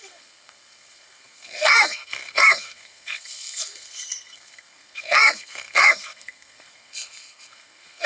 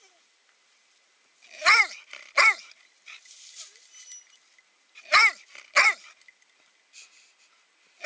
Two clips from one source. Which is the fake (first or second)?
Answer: first